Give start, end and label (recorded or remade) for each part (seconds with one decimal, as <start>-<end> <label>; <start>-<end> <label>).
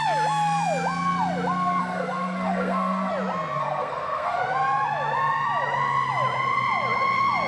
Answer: 0.0-1.8 recorded; 1.8-3.1 remade; 3.1-3.6 recorded; 3.6-4.4 remade; 4.4-7.5 recorded